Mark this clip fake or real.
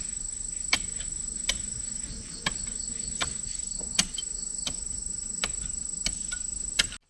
real